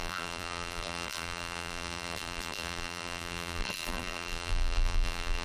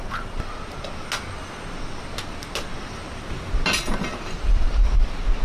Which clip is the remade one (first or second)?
first